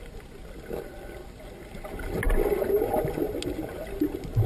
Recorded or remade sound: recorded